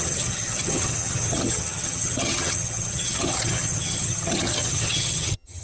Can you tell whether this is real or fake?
fake